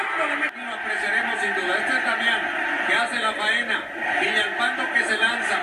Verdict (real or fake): real